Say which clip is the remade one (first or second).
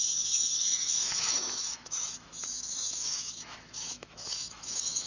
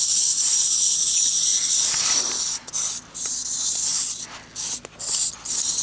first